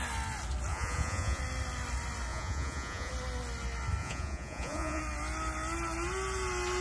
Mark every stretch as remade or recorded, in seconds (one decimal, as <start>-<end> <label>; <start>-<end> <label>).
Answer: 0.0-0.7 recorded; 0.7-1.4 remade; 1.4-2.3 recorded; 2.3-3.1 remade; 3.1-4.0 recorded; 4.0-5.0 remade; 5.0-6.8 recorded